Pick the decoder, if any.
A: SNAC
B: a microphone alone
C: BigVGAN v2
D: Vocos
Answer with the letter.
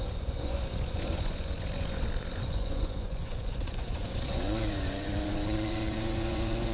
D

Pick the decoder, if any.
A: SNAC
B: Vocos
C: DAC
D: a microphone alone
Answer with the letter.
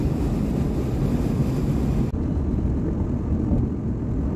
D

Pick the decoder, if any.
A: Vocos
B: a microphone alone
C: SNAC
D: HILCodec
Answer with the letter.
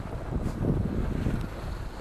B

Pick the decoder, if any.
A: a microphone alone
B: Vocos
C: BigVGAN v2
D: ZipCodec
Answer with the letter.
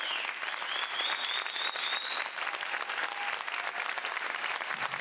A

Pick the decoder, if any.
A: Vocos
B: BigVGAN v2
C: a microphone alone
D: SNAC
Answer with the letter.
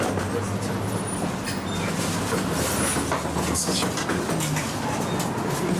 C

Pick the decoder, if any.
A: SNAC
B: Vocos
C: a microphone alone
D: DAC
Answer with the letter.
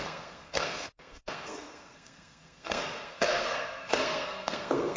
A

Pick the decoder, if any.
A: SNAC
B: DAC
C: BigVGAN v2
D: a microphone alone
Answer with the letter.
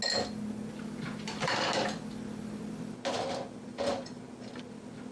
D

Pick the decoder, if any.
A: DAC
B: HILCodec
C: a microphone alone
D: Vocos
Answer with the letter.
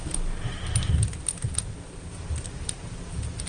C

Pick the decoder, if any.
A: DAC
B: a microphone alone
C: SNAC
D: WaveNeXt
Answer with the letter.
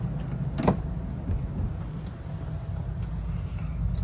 B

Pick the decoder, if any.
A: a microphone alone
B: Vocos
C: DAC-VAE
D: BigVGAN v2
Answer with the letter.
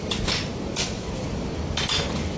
A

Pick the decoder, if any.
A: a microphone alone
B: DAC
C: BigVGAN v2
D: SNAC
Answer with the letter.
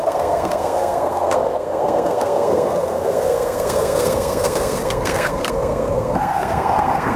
D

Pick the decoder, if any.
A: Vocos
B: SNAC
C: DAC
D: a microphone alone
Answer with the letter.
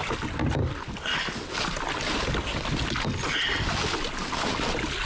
D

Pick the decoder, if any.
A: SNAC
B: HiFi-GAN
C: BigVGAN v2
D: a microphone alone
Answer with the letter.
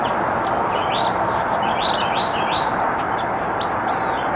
D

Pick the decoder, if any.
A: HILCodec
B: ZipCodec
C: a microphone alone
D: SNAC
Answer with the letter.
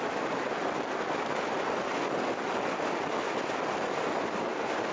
C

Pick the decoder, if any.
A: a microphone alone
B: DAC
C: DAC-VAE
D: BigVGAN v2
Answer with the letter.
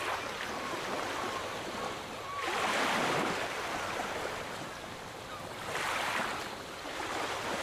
A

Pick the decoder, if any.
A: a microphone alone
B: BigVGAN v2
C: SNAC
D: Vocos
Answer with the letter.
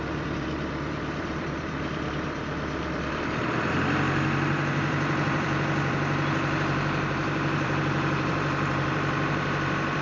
B